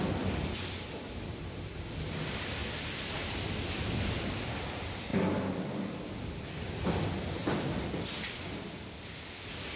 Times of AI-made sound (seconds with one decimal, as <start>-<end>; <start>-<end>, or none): none